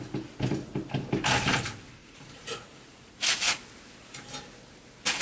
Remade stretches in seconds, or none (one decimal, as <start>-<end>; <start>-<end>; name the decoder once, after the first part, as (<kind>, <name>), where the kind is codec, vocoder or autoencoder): 2.0-3.6 (vocoder, Vocos)